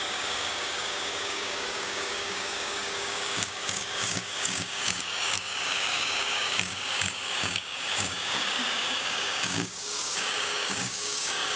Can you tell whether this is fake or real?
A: fake